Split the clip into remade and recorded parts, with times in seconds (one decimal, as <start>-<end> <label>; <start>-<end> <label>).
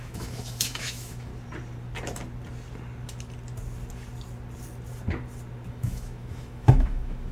0.0-1.3 remade; 1.3-5.7 recorded; 5.7-7.3 remade